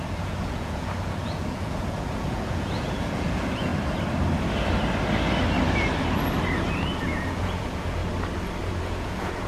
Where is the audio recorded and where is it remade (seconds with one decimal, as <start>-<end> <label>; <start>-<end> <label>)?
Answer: 0.0-3.7 remade; 3.7-7.0 recorded; 7.0-8.0 remade; 8.0-8.8 recorded; 8.8-9.5 remade